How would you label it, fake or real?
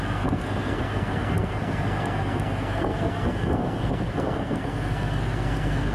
fake